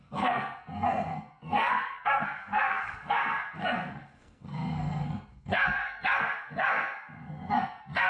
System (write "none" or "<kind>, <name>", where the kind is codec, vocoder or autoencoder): codec, SNAC